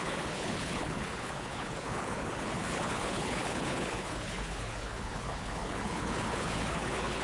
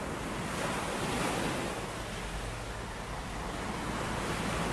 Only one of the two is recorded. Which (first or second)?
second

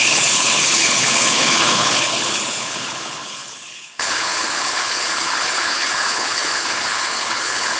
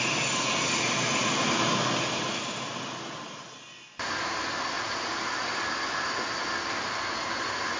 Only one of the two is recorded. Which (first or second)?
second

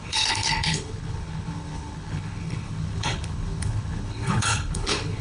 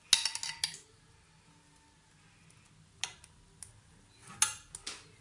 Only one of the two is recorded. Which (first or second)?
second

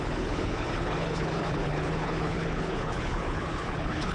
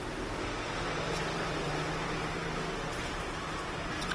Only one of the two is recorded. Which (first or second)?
second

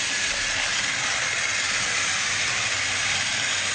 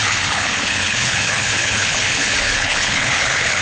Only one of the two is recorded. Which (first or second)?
first